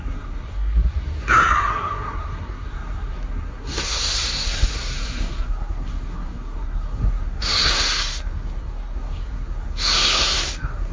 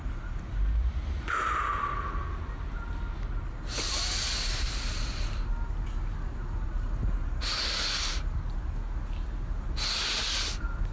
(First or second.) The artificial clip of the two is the first